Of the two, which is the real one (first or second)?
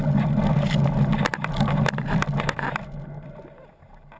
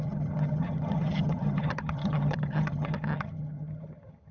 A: first